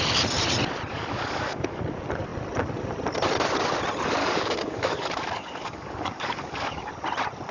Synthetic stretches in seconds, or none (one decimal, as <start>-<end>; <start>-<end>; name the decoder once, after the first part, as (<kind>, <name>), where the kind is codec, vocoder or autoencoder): 0.9-1.8 (codec, DAC); 4.2-6.9